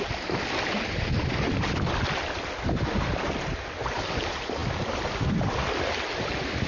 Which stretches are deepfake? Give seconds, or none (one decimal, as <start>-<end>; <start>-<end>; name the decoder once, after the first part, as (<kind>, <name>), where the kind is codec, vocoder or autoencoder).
none